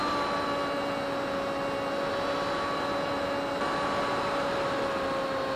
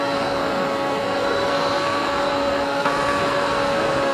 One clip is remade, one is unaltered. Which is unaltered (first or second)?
first